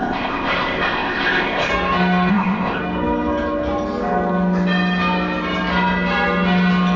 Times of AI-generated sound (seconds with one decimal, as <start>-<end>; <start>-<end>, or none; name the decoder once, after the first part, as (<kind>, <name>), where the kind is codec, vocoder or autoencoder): 0.0-1.7 (codec, ZipCodec); 2.3-2.8